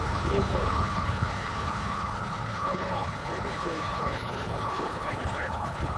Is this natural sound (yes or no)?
no